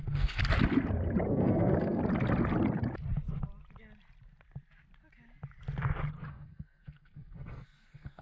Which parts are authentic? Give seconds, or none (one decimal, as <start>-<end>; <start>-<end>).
0.4-1.3; 2.0-6.3